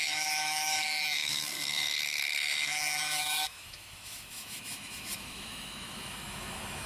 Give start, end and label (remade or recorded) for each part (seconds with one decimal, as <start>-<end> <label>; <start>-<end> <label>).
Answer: 0.0-6.9 remade